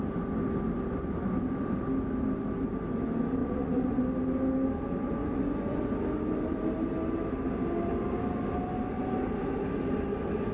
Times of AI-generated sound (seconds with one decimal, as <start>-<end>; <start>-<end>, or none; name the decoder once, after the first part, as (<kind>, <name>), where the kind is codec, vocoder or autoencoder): 3.4-4.0 (vocoder, Vocos); 5.2-5.9